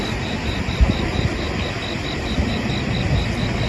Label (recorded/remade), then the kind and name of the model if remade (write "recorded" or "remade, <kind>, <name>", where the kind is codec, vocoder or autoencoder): recorded